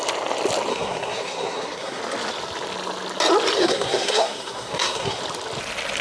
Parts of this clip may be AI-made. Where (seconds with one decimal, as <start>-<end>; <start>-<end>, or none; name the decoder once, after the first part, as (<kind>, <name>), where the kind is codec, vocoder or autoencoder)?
0.7-2.0 (codec, SNAC); 3.6-5.2